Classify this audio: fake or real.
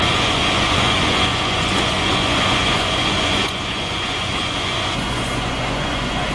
fake